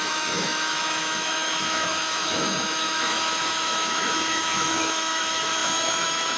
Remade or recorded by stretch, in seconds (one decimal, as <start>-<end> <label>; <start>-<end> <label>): 0.0-6.4 remade